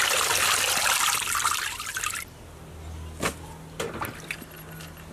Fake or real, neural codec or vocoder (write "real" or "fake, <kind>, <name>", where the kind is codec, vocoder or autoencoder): real